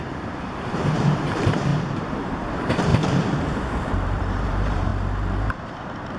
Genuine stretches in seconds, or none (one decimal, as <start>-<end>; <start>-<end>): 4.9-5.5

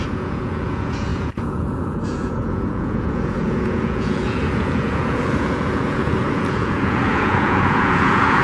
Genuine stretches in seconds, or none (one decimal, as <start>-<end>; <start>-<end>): none

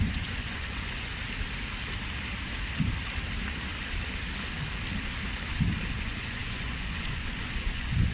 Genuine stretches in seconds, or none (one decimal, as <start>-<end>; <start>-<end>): 1.1-6.0

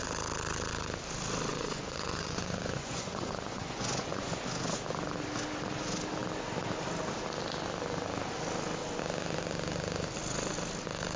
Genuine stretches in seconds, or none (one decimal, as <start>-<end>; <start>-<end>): 0.0-1.5; 4.4-11.2